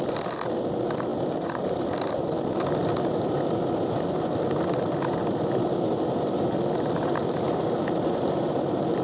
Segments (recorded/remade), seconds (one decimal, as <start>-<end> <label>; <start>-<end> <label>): 0.0-9.0 recorded